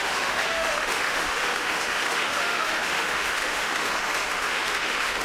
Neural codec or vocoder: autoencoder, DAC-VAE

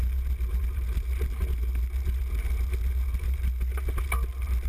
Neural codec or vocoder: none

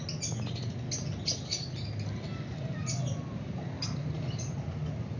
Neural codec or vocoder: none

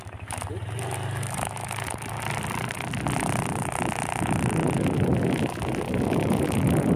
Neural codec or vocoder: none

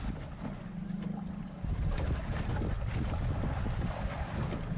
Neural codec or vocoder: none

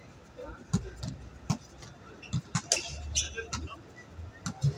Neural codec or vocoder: none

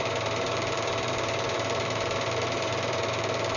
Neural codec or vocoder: vocoder, BigVGAN v2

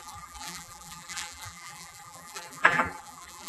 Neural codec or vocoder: vocoder, BigVGAN v2